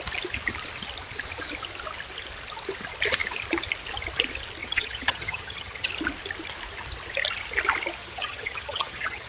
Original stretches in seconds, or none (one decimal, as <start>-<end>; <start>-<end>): 0.0-4.6; 5.9-8.0